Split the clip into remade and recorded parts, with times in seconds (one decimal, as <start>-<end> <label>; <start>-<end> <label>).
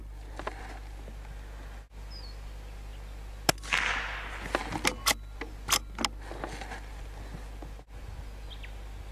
0.0-9.1 recorded